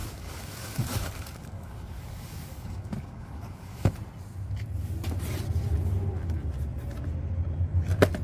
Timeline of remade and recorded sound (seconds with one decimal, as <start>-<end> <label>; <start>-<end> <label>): 0.0-3.9 remade; 3.9-8.2 recorded